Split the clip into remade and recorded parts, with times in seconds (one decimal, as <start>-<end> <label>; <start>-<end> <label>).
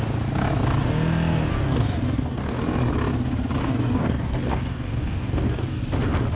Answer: 0.0-1.5 recorded; 1.5-2.6 remade; 2.6-3.6 recorded; 3.6-5.8 remade; 5.8-6.4 recorded